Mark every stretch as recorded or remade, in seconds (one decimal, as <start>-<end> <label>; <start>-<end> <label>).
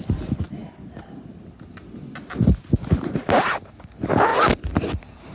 0.0-5.3 recorded